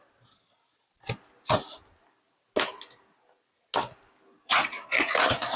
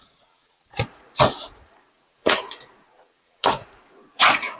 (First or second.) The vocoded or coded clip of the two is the second